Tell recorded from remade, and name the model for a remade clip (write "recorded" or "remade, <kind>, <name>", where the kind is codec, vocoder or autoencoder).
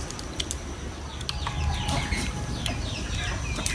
recorded